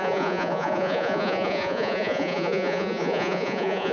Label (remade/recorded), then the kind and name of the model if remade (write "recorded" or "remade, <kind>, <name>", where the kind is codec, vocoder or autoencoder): remade, vocoder, Vocos